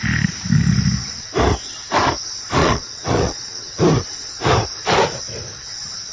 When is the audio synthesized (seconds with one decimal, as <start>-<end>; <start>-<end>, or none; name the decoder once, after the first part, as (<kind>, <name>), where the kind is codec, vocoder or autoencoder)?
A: 2.6-3.8 (vocoder, WaveNeXt)